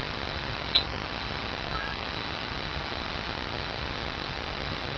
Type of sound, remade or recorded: remade